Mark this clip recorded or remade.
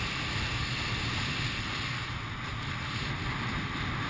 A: recorded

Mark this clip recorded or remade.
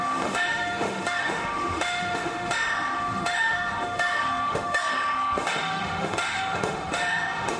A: remade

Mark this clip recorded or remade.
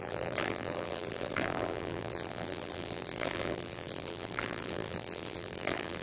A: remade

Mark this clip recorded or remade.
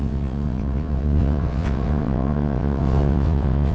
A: remade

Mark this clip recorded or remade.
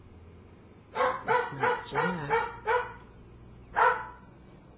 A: recorded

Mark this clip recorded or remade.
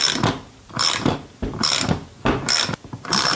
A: recorded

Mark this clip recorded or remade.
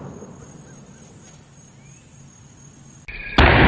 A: recorded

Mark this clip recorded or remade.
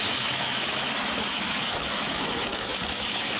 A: remade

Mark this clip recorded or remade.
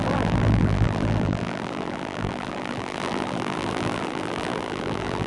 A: remade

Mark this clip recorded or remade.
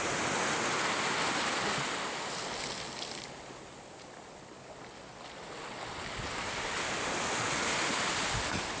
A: recorded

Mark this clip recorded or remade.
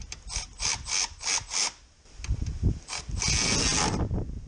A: recorded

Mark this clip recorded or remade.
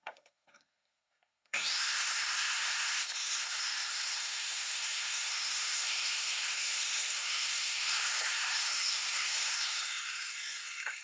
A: remade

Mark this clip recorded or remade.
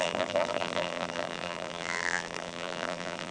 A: remade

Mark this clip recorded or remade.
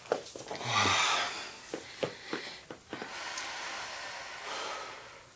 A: recorded